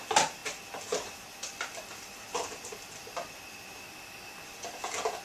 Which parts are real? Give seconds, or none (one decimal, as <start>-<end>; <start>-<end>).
0.0-5.2

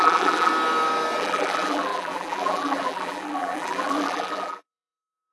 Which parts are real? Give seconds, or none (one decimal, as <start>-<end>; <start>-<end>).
0.5-1.2

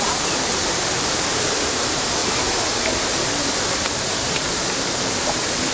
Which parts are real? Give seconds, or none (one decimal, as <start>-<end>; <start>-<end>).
none

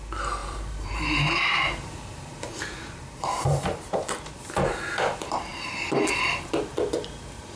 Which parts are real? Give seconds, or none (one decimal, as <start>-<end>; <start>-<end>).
0.0-0.4; 4.3-7.6

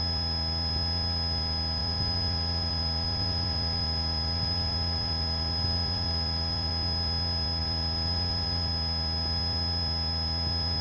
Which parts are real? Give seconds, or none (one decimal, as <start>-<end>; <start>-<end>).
0.0-1.8; 6.7-7.6; 8.7-10.8